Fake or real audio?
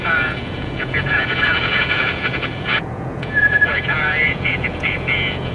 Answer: fake